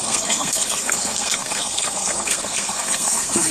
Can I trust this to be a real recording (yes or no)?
no